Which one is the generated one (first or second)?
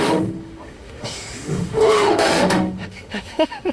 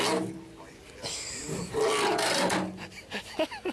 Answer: first